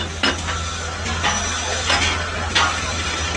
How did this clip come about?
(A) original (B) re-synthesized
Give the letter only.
A